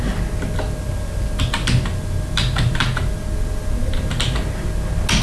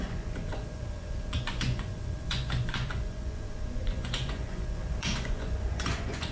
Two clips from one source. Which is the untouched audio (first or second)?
first